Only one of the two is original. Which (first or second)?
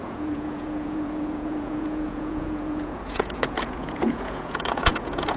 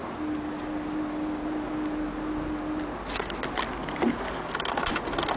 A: second